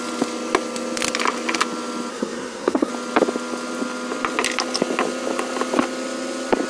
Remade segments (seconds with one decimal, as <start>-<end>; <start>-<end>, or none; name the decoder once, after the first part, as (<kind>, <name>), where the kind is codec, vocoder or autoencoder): 2.1-2.9 (codec, SNAC)